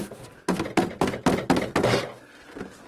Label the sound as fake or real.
real